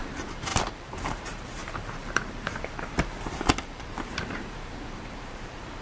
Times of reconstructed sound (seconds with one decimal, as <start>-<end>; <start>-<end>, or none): 0.0-5.8